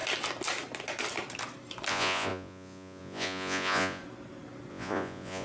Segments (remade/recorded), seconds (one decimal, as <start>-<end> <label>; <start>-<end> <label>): 0.0-1.9 recorded; 1.9-4.0 remade; 4.0-4.7 recorded; 4.7-5.4 remade